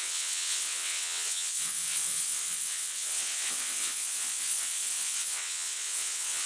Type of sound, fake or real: fake